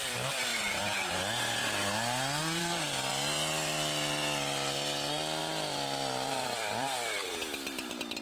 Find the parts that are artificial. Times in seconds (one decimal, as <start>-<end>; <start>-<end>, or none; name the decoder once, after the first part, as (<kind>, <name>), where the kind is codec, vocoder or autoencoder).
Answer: 0.0-1.8 (vocoder, BigVGAN v2); 2.4-3.1; 5.4-8.2